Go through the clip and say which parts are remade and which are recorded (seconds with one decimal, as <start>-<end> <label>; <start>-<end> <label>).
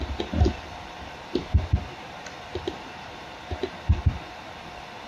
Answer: 0.0-1.4 recorded; 1.4-4.5 remade; 4.5-5.1 recorded